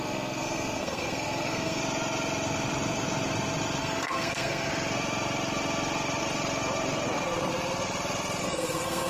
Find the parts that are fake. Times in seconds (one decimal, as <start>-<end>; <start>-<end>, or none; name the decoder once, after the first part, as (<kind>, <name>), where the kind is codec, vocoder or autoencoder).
0.0-1.8 (codec, SNAC); 3.8-4.7; 8.4-9.1